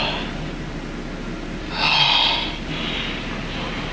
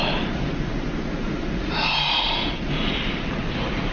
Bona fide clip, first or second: first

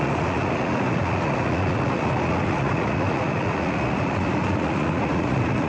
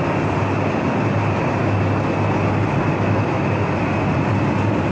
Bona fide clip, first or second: second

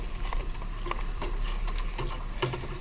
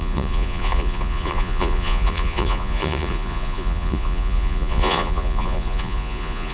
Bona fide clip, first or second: first